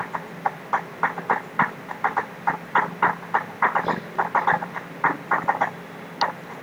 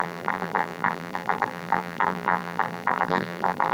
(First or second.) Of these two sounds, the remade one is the second